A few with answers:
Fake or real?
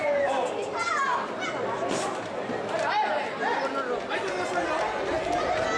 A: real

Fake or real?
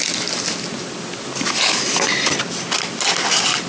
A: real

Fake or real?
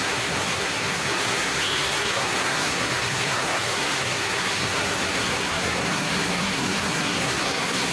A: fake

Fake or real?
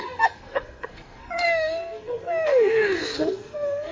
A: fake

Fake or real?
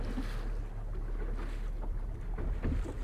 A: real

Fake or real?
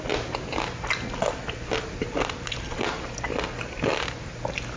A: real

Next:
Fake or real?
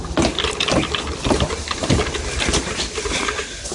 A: real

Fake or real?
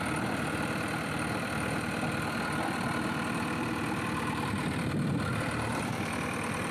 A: fake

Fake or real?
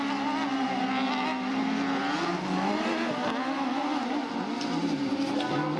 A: real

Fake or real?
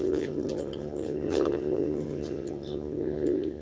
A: fake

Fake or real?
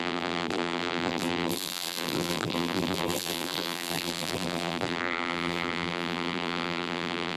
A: fake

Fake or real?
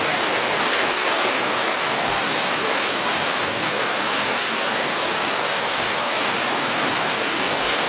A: fake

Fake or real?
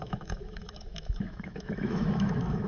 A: fake